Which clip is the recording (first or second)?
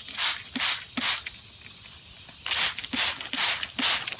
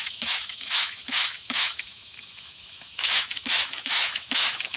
first